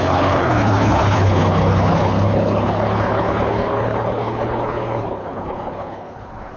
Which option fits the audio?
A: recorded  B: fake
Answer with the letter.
B